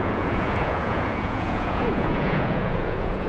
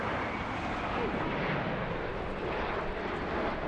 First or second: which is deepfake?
first